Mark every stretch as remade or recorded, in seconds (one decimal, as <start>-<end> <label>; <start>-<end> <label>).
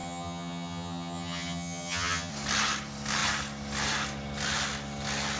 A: 0.0-2.3 remade; 2.3-5.4 recorded